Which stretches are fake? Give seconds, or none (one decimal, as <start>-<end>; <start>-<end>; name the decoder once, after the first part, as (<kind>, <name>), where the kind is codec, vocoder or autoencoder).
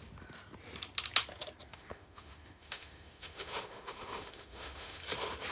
1.7-5.0 (autoencoder, DAC-VAE)